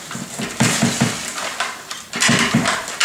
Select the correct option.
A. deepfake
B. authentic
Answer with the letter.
A